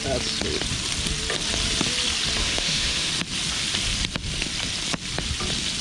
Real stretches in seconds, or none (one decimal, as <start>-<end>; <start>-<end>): 0.0-2.4; 3.1-5.8